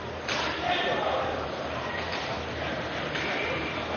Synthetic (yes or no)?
yes